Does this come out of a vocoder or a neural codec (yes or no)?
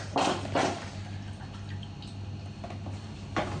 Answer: no